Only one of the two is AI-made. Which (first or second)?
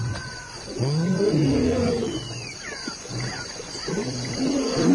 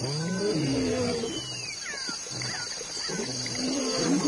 first